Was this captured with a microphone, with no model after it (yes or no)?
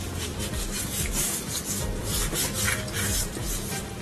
yes